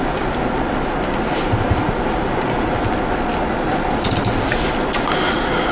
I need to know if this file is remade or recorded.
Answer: recorded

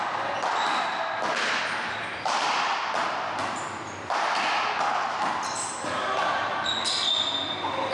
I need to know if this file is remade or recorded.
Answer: recorded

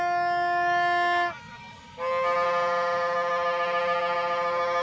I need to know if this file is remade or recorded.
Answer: recorded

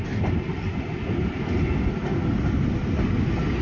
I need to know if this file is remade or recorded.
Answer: recorded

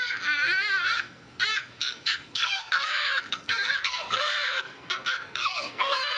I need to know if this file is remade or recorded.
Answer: remade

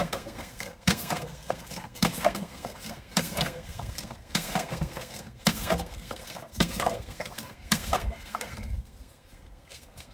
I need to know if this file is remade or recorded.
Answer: remade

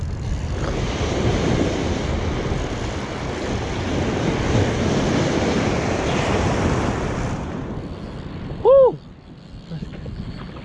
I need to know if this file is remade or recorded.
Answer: recorded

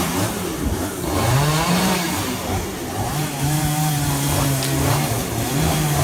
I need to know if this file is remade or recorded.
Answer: remade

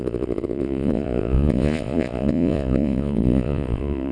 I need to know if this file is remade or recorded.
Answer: remade